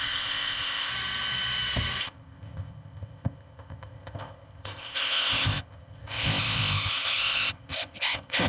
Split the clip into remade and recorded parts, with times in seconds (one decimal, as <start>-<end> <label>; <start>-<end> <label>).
0.0-0.9 remade; 0.9-2.0 recorded; 2.0-8.5 remade